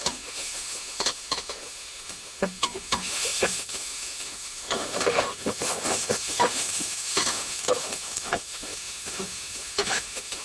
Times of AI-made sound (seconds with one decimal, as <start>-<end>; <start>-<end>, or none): 0.0-10.4